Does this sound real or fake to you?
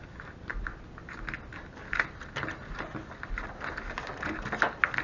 real